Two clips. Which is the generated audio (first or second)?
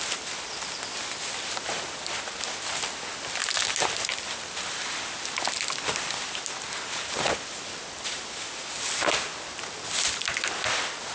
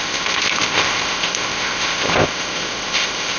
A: second